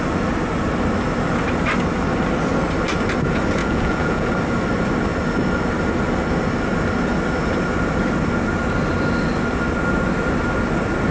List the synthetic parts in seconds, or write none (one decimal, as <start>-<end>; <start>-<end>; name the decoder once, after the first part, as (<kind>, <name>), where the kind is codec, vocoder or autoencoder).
3.6-4.3 (vocoder, Vocos)